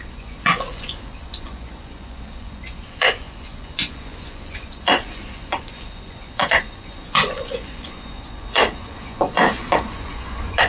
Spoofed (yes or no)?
yes